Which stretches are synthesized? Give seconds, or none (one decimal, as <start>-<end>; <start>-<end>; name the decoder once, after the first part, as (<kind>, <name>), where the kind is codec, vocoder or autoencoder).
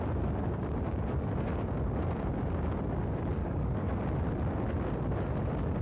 3.4-4.0 (codec, DAC)